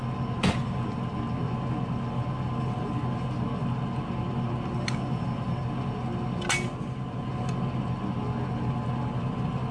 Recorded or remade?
recorded